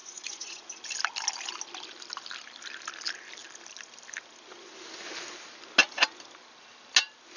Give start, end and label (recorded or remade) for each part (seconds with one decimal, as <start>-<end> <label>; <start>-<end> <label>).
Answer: 0.0-0.7 remade; 0.7-7.4 recorded